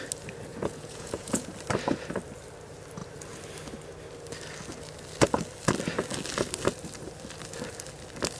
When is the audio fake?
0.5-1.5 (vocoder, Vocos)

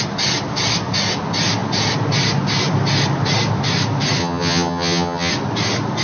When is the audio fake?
4.2-5.3 (vocoder, HiFi-GAN)

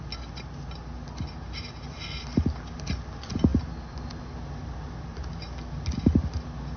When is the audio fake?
none

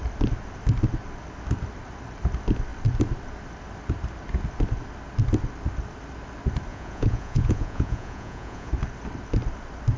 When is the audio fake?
6.7-8.7 (vocoder, Vocos)

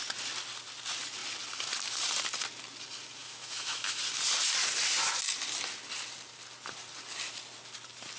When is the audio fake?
3.2-4.0 (autoencoder, DAC-VAE)

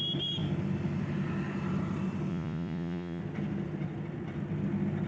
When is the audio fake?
2.3-3.2 (vocoder, Vocos)

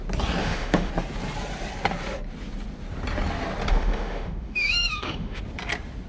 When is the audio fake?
0.4-0.9 (autoencoder, DAC-VAE); 3.7-5.4

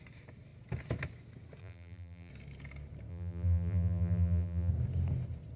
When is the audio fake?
1.6-2.3 (vocoder, BigVGAN v2); 3.1-4.7